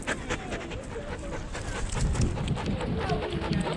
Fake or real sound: real